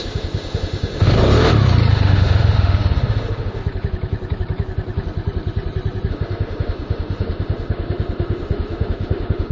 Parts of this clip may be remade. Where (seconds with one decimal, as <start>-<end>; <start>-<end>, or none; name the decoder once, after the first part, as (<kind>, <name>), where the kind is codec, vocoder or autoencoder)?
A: 0.0-1.2 (autoencoder, DAC-VAE); 1.9-3.6; 6.1-9.5